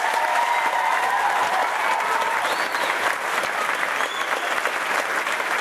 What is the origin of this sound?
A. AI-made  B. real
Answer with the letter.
B